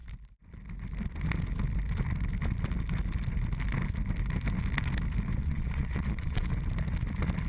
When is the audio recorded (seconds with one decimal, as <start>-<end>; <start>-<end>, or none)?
0.0-5.4; 6.5-7.5